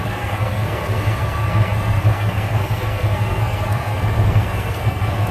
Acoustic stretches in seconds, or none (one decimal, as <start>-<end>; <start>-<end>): none